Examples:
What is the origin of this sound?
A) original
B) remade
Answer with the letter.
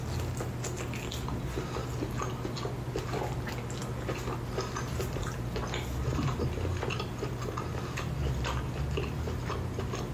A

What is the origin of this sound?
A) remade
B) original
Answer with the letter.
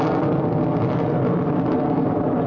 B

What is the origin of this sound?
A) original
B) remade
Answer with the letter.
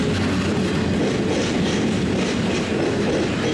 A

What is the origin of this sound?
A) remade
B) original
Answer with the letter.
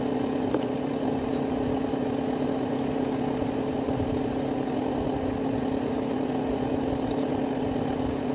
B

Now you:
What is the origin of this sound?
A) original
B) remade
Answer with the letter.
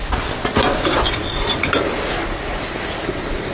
A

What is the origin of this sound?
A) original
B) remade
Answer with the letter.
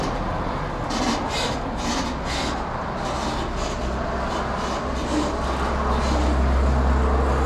A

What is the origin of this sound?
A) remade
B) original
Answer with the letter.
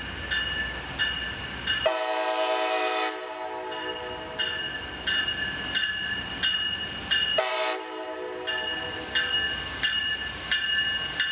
B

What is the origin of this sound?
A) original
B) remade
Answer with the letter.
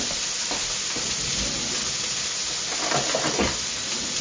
A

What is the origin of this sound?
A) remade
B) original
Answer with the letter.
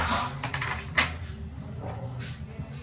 B